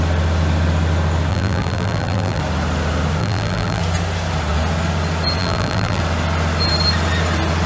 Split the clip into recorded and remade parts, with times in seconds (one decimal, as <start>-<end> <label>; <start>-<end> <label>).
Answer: 0.0-1.3 recorded; 1.3-2.4 remade; 2.4-3.2 recorded; 3.2-3.8 remade; 3.8-5.4 recorded; 5.4-6.0 remade; 6.0-7.7 recorded